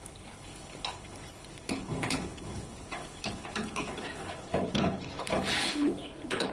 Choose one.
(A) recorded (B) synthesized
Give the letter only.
B